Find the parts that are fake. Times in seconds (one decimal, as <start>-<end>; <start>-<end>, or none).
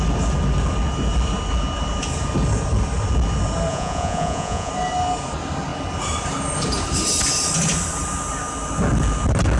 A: 3.7-4.7